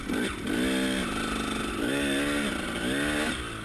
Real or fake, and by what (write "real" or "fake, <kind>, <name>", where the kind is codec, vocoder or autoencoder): real